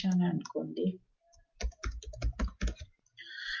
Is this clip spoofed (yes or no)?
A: no